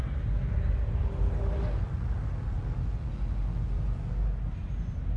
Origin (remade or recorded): recorded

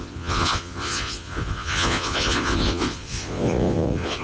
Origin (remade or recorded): remade